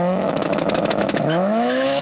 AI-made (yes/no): yes